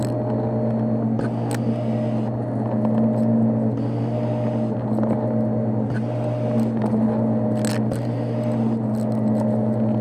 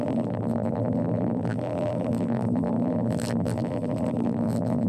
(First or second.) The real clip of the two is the first